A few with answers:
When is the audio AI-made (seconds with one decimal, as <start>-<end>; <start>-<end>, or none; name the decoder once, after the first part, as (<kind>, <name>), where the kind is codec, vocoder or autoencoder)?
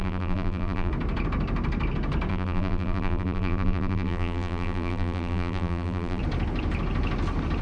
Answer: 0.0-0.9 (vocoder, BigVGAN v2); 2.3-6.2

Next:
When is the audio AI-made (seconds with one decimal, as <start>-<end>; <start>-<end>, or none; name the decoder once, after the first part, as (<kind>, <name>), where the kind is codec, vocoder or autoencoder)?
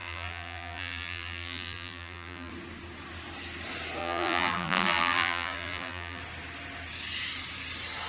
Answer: 0.0-2.5 (vocoder, BigVGAN v2); 4.0-6.2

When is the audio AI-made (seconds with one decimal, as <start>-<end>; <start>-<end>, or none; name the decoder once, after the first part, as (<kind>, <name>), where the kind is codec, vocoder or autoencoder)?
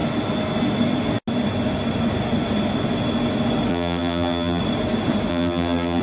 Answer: 3.7-4.6 (vocoder, BigVGAN v2); 5.3-6.0